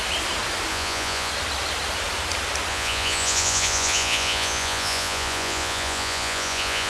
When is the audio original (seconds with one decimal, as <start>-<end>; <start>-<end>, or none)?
0.0-0.7; 1.3-2.7